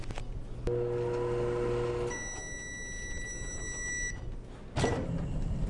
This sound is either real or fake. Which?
real